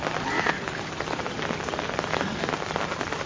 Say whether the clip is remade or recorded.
recorded